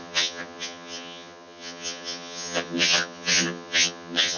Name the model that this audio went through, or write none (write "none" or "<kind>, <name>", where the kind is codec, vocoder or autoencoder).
vocoder, HiFi-GAN